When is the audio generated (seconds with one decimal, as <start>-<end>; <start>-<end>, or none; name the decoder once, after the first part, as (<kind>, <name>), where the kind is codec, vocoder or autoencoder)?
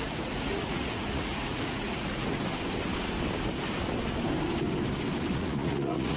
0.0-2.4 (vocoder, Vocos); 5.3-6.2